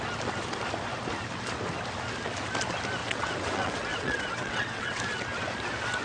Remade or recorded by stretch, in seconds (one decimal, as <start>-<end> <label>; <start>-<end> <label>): 0.0-3.0 recorded; 3.0-5.0 remade; 5.0-6.0 recorded